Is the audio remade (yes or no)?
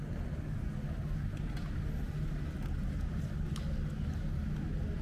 no